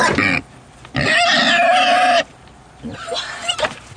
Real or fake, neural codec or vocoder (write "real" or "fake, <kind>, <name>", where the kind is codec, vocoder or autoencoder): real